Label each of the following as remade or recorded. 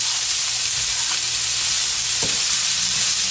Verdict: recorded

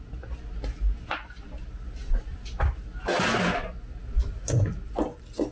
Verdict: recorded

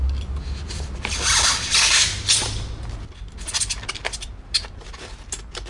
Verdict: recorded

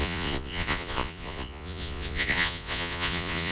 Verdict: remade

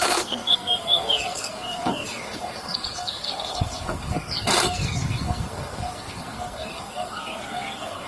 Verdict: remade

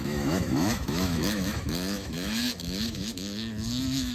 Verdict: remade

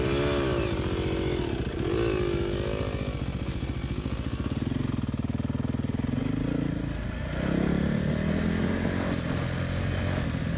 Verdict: recorded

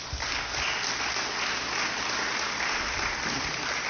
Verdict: recorded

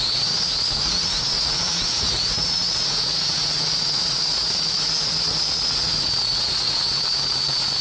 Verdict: remade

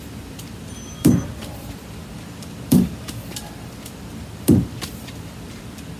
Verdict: remade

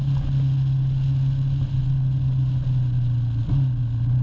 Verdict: recorded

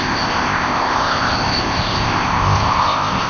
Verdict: remade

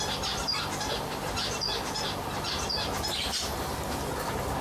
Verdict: recorded